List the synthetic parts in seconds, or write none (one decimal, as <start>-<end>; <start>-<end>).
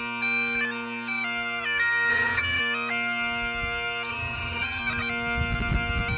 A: 2.1-2.6; 4.1-4.8